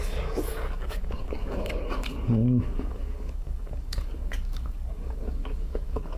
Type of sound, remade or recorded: remade